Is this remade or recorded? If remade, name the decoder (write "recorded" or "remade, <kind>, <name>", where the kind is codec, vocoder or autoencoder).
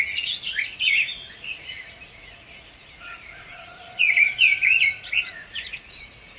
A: remade, vocoder, Vocos